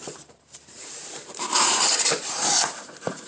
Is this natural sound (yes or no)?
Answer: no